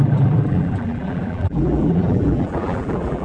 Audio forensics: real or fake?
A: fake